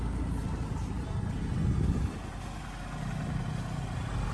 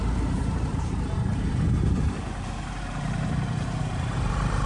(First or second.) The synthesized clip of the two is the second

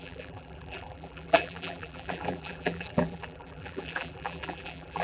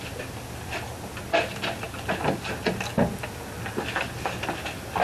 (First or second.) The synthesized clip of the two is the first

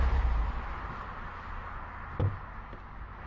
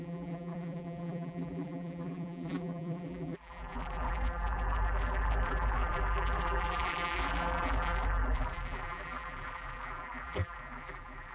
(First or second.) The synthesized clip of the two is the second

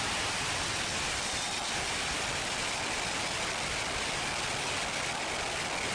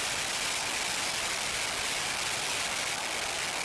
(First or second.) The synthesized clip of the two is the first